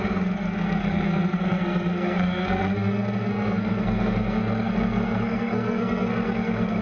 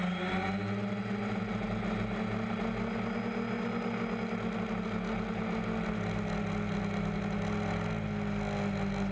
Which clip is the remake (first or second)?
first